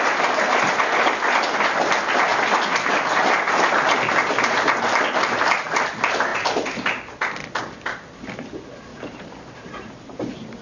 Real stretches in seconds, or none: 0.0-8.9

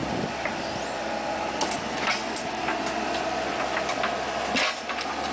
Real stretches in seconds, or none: 3.2-5.3

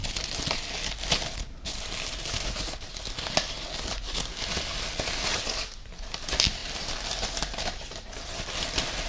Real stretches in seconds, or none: 0.0-9.1

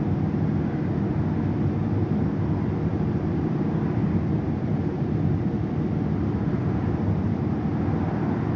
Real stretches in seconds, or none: 0.0-2.9; 4.9-8.6